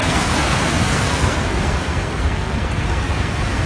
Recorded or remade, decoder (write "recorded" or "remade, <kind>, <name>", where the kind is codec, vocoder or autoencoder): remade, codec, SNAC